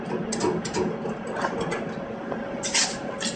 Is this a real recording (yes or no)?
yes